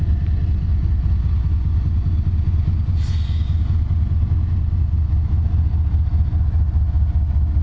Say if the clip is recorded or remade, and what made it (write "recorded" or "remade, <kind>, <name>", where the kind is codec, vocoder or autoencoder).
recorded